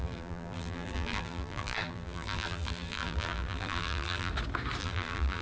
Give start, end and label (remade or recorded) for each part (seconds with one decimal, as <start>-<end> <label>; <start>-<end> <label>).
0.0-4.3 remade; 4.3-4.8 recorded; 4.8-5.4 remade